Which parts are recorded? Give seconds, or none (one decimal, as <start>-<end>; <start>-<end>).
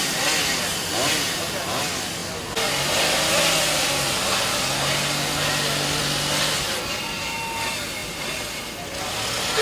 0.0-8.0; 8.6-9.6